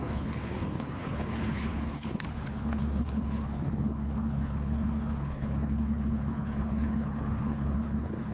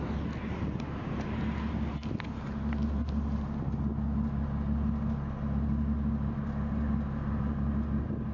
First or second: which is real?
second